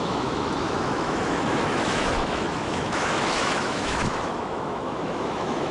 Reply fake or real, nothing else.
fake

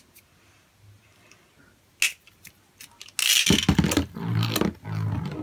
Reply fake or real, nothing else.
real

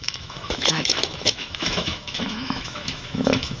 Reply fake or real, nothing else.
fake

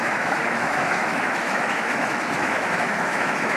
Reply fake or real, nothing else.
fake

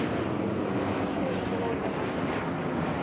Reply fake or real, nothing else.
real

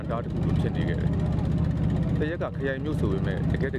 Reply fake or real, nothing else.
real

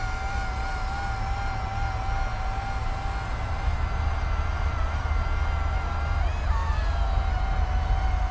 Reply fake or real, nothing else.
real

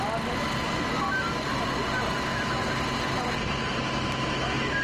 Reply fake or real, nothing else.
real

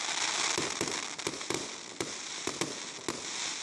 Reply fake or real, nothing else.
real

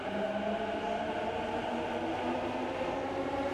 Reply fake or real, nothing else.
real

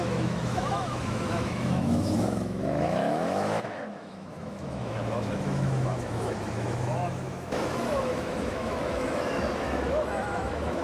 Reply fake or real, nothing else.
fake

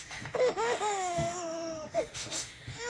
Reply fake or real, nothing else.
fake